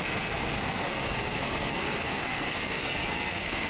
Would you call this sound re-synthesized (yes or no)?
yes